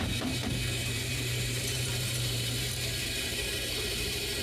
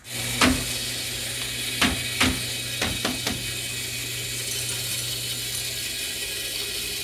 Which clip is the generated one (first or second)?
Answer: first